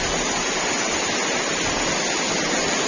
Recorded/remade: recorded